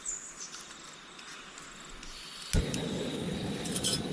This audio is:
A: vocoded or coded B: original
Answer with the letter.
B